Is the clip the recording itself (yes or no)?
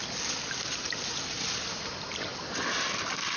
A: yes